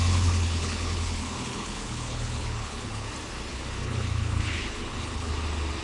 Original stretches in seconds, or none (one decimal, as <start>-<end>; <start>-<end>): 3.1-3.5; 5.3-5.8